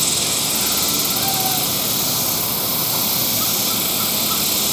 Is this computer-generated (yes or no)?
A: no